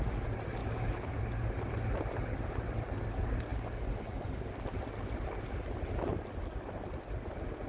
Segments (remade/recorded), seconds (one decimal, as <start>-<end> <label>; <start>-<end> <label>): 0.0-0.6 recorded; 0.6-1.2 remade; 1.2-7.7 recorded